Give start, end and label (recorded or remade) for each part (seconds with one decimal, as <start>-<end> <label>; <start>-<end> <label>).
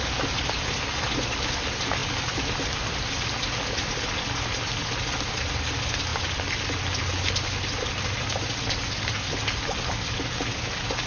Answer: 0.0-11.1 recorded